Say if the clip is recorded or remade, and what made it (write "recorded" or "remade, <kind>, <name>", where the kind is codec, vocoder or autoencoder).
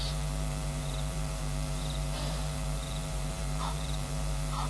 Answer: remade, vocoder, BigVGAN v2